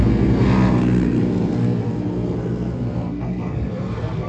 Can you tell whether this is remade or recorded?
remade